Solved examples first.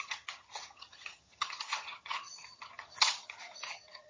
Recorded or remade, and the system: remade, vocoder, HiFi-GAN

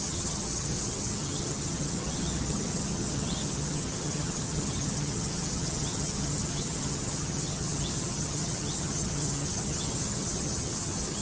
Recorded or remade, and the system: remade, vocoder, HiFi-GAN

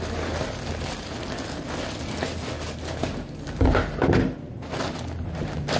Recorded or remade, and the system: recorded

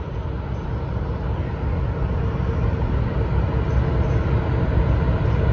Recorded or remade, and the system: recorded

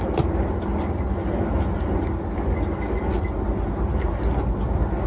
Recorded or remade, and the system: recorded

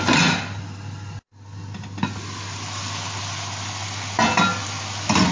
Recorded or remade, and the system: recorded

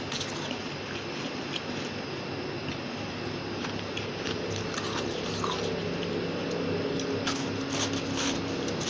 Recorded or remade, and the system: recorded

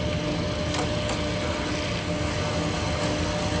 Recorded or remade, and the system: recorded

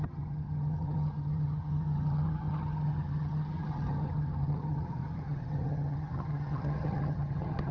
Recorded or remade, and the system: remade, vocoder, HiFi-GAN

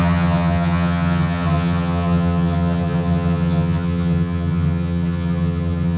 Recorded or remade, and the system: remade, vocoder, HiFi-GAN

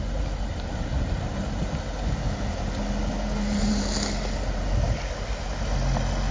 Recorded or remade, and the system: recorded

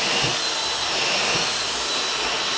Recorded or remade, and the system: recorded